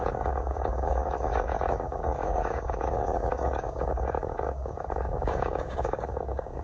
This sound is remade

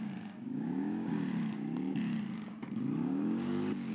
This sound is remade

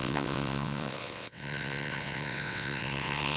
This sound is remade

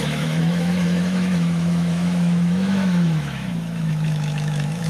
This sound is remade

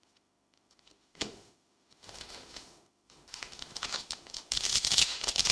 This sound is remade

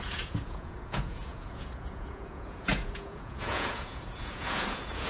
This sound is remade